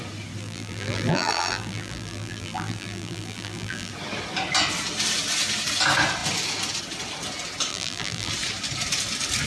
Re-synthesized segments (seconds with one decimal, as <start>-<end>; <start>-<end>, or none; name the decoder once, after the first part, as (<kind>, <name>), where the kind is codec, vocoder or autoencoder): 0.4-3.9 (vocoder, BigVGAN v2); 7.7-8.3